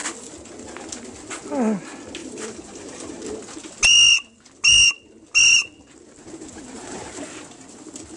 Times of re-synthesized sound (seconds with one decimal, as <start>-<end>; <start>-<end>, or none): 2.2-3.3